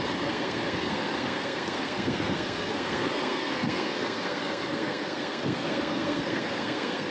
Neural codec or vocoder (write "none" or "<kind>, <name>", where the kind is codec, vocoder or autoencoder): codec, SNAC